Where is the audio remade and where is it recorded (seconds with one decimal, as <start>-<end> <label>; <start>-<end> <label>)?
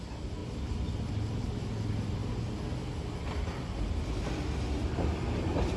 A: 0.0-5.8 recorded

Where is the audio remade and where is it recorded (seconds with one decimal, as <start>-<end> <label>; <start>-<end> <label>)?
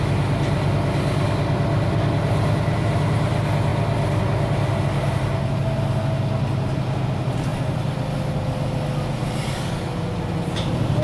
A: 0.0-11.0 recorded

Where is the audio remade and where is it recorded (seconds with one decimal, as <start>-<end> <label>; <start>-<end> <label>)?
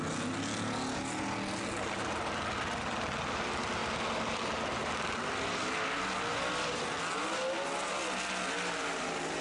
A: 0.0-9.4 recorded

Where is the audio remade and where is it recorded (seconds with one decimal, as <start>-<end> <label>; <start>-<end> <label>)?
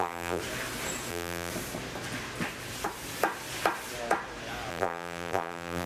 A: 0.0-0.4 remade; 0.4-1.1 recorded; 1.1-1.5 remade; 1.5-4.7 recorded; 4.7-5.9 remade